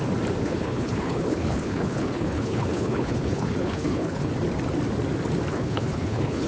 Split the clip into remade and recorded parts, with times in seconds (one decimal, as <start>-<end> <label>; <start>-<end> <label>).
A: 0.0-0.4 recorded; 0.4-4.3 remade; 4.3-5.5 recorded; 5.5-6.5 remade